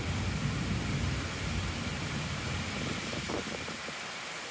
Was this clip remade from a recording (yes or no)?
no